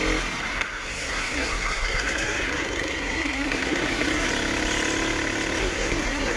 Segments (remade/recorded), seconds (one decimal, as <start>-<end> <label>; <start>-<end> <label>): 0.0-0.5 recorded; 0.5-4.3 remade; 4.3-5.6 recorded; 5.6-6.4 remade